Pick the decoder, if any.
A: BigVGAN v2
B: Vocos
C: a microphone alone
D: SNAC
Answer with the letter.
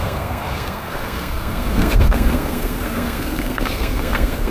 D